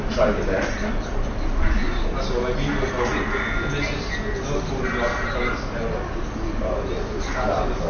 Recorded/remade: recorded